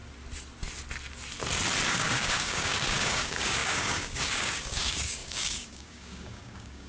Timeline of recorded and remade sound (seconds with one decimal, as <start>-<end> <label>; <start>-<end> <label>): 0.0-1.9 recorded; 1.9-6.9 remade